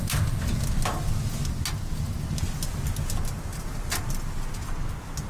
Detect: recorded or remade recorded